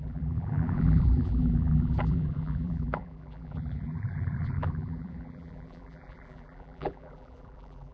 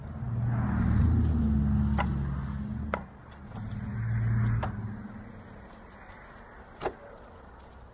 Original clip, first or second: second